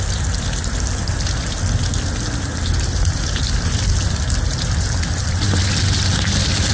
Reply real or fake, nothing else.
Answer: real